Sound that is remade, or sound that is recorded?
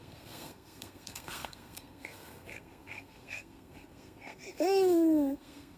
remade